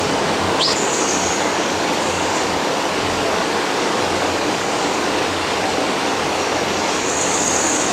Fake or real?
fake